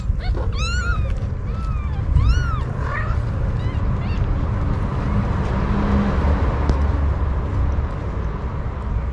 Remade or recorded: recorded